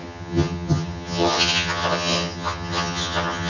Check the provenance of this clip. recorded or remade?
remade